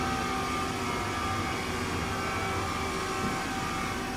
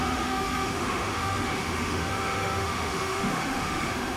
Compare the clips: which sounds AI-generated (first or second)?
second